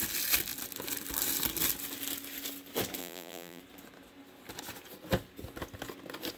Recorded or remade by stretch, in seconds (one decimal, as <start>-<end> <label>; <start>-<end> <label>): 0.0-3.0 recorded; 3.0-3.6 remade; 3.6-6.4 recorded